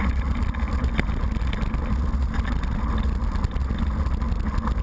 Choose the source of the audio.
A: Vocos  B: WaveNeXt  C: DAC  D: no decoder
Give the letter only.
D